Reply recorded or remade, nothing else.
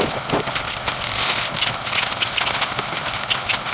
recorded